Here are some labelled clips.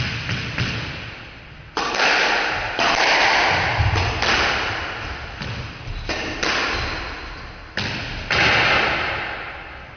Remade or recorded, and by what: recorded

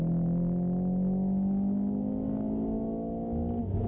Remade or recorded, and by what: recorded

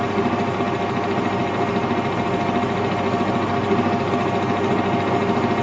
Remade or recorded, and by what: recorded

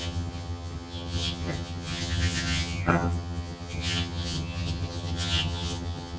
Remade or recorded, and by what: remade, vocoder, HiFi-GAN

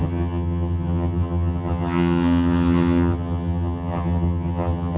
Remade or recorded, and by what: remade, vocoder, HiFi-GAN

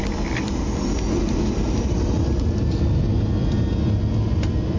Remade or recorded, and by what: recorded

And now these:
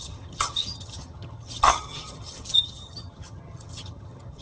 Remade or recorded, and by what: remade, vocoder, HiFi-GAN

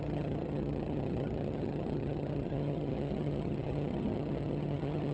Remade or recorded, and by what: remade, vocoder, HiFi-GAN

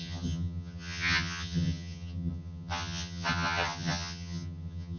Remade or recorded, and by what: remade, vocoder, HiFi-GAN